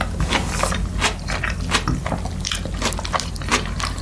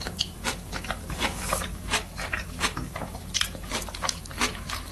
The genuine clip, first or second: first